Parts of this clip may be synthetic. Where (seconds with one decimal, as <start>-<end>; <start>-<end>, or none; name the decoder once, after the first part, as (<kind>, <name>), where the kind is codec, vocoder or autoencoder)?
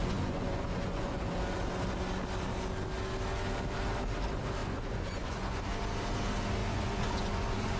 0.0-1.2 (vocoder, Vocos); 4.6-5.6; 6.6-7.8